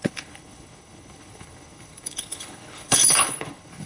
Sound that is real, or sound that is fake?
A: fake